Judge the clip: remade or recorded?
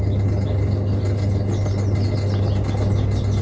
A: recorded